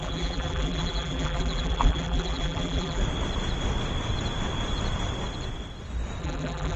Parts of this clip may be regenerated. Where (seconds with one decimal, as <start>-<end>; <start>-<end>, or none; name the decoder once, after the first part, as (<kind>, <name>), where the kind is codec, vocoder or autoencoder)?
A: 0.0-3.0 (vocoder, BigVGAN v2); 6.2-6.8